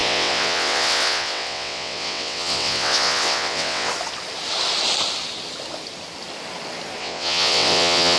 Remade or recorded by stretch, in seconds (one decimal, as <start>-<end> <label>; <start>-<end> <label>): 0.0-3.9 remade; 3.9-7.0 recorded; 7.0-8.2 remade